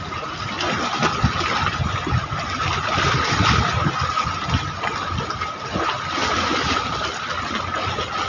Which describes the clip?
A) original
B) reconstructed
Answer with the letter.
A